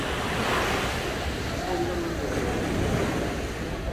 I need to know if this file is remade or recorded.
recorded